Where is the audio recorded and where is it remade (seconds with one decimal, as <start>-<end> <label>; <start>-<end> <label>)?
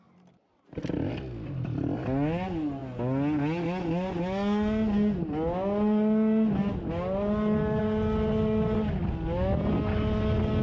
0.0-10.6 recorded